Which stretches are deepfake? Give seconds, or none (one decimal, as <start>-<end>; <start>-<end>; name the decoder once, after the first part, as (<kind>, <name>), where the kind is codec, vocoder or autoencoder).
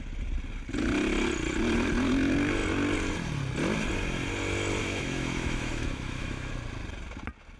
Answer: 4.8-6.5 (autoencoder, DAC-VAE)